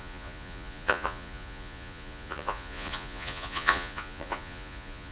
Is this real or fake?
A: fake